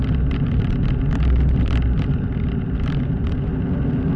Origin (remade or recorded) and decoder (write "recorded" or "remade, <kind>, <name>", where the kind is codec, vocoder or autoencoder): recorded